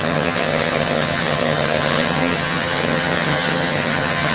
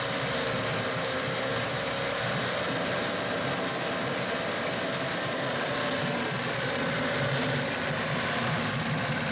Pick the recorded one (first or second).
second